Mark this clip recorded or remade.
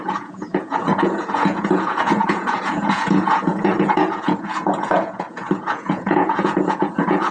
remade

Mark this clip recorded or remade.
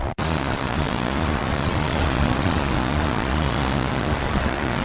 remade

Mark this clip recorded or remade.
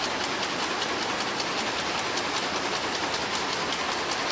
recorded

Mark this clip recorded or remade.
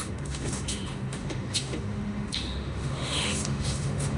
remade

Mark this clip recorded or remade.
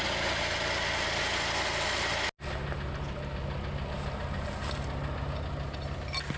recorded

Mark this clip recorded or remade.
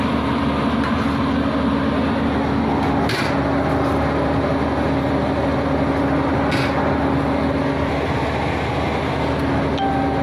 recorded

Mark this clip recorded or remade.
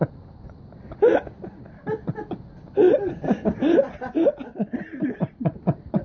recorded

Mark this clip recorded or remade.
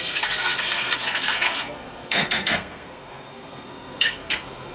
remade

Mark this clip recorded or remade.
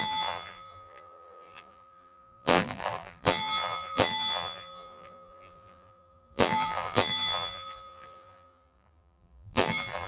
remade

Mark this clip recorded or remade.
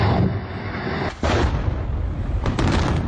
recorded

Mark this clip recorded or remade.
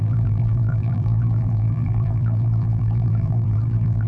remade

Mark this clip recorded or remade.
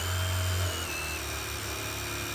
recorded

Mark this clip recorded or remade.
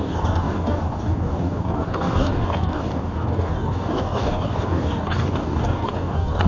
remade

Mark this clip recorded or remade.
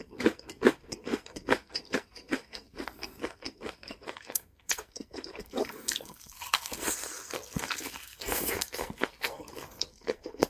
remade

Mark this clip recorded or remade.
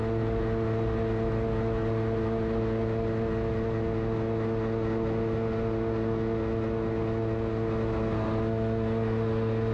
recorded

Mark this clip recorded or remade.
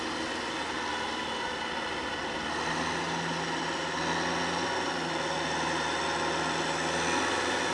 recorded